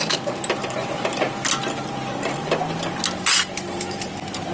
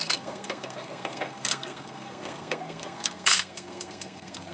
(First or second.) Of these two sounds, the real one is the first